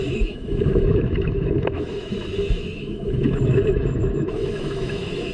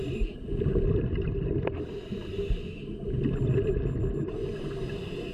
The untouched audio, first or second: second